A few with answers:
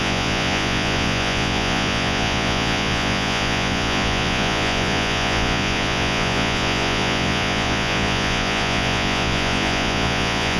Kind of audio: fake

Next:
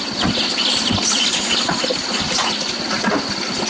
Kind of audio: real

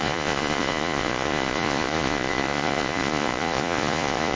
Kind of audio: fake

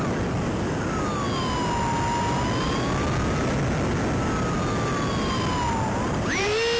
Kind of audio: real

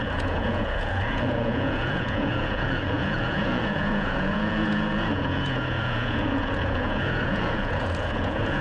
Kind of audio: fake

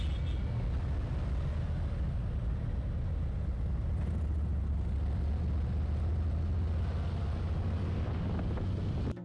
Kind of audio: real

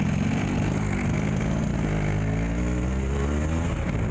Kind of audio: real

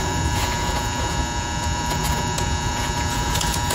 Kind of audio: fake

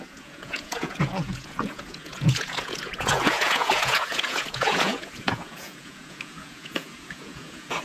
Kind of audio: fake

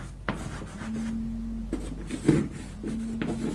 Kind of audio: real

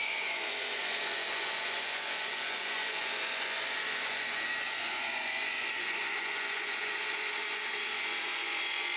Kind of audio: fake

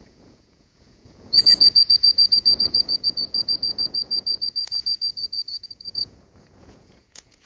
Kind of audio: fake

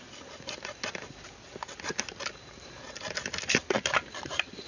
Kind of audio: real